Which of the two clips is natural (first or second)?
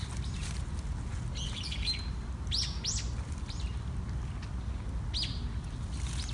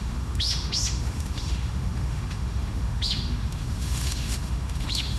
first